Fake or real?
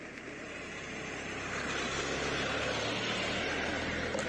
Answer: real